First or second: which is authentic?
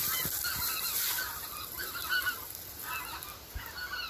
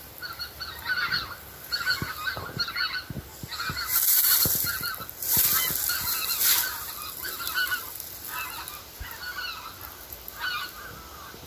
second